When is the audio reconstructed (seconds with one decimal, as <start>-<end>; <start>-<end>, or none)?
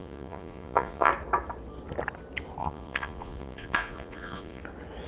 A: 0.0-1.1; 2.6-4.6